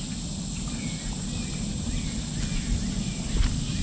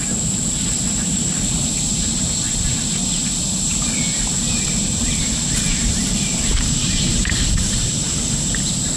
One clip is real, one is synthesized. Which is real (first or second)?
first